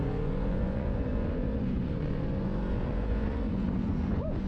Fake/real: fake